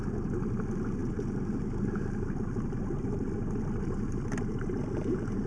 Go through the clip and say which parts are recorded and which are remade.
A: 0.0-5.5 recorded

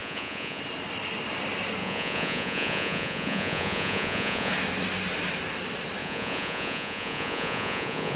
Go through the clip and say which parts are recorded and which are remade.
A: 0.0-0.6 remade; 0.6-1.8 recorded; 1.8-4.5 remade; 4.5-6.0 recorded; 6.0-8.2 remade

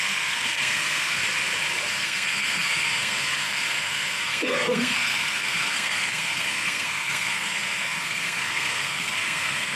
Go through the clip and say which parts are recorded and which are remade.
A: 0.0-1.2 remade; 1.2-1.9 recorded; 1.9-9.8 remade